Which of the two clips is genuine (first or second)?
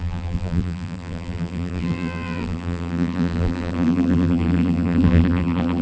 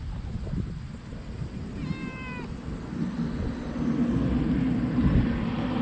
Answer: second